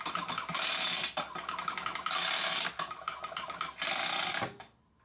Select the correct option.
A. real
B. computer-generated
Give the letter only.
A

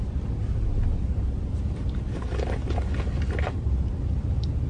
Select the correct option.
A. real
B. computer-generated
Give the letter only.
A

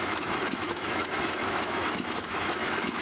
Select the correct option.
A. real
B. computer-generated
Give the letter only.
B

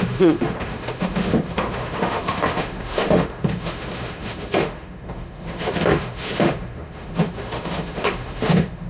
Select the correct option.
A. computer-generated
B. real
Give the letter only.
A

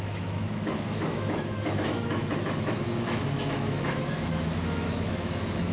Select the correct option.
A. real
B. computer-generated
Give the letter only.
B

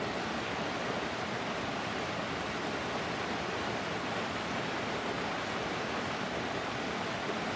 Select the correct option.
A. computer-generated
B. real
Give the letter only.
B